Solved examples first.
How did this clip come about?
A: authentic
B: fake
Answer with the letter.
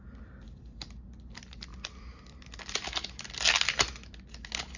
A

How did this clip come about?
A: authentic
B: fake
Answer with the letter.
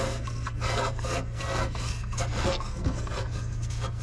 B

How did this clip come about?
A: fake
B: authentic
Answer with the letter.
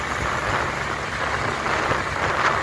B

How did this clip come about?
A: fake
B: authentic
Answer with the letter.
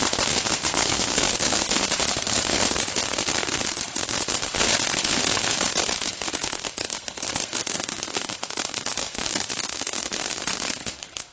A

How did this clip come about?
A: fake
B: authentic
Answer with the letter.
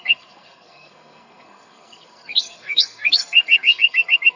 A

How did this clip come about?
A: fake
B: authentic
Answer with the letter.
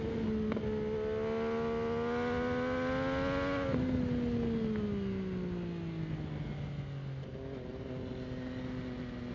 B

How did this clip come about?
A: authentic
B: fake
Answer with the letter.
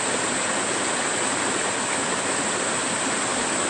A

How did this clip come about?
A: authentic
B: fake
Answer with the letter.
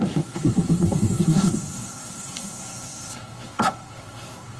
B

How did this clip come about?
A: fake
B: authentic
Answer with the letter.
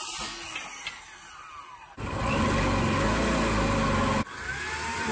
B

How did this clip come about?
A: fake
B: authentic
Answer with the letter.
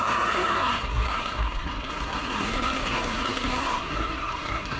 A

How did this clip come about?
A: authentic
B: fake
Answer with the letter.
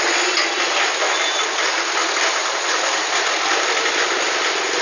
A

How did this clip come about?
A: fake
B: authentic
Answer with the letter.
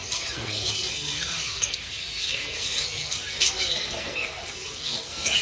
A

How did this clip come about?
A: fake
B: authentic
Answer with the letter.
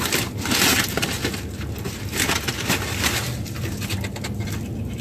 B